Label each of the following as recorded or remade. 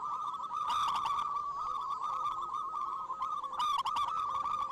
recorded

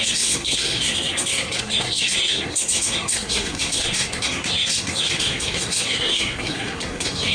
remade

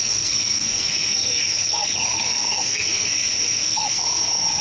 remade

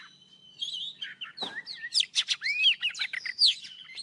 recorded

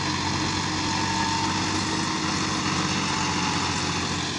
recorded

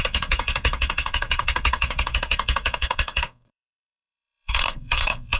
remade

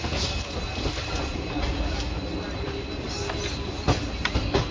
recorded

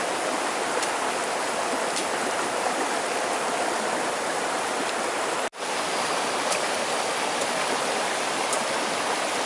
recorded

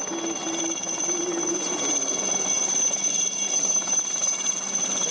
recorded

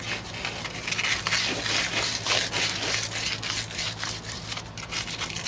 recorded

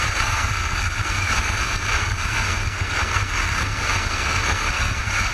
remade